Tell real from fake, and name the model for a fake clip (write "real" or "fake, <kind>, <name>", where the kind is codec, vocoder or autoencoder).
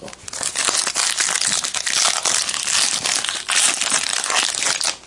real